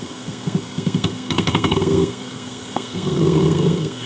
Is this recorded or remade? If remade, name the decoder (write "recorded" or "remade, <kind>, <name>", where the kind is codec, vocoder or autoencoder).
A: remade, codec, SNAC